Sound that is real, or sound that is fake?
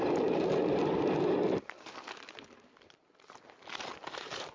fake